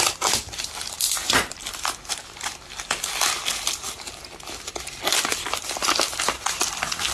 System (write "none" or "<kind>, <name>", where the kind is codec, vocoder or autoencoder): none